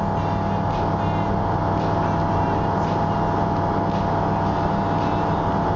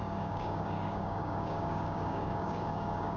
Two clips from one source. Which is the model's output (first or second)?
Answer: second